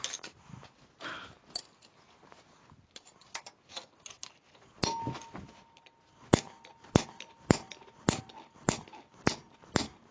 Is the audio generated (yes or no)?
no